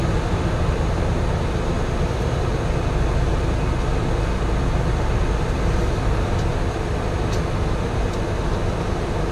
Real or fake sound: real